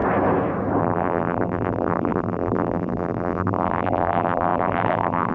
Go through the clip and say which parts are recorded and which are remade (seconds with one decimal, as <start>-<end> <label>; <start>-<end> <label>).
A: 0.0-0.8 recorded; 0.8-5.3 remade